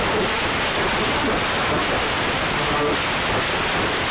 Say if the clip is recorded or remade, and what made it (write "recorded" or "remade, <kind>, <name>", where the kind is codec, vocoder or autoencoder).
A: recorded